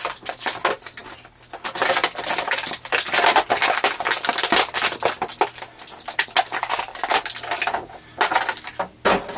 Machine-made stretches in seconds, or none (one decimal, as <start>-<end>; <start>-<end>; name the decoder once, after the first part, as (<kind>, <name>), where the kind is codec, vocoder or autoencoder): none